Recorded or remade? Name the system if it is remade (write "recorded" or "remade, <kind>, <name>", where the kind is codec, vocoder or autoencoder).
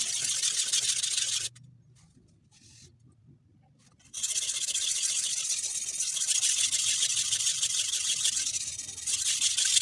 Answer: recorded